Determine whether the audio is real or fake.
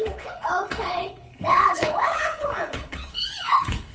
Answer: fake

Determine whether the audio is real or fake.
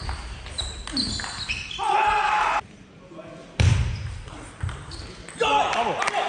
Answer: real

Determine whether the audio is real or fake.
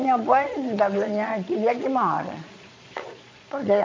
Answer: fake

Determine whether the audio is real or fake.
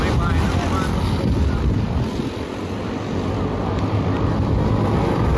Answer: real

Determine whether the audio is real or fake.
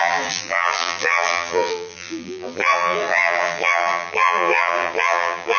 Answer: fake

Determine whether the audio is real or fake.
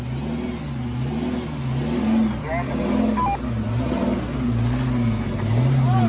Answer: real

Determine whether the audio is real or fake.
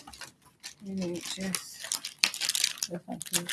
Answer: real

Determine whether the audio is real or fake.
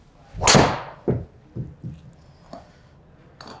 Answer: real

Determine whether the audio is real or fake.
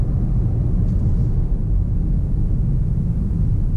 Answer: real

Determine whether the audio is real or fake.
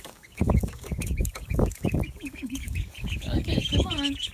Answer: fake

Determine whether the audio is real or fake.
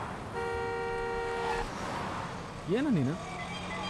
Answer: real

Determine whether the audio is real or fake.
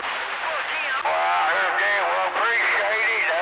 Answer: real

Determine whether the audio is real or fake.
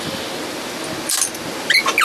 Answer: real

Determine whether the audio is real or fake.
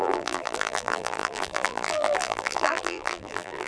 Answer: fake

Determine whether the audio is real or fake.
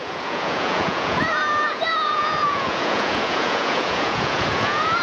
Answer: fake